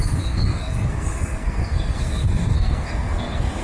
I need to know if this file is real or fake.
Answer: fake